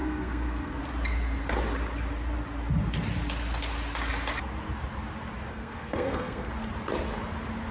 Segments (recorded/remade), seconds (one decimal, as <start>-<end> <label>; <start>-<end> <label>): 0.0-0.8 remade; 0.8-5.5 recorded; 5.5-6.5 remade; 6.5-7.7 recorded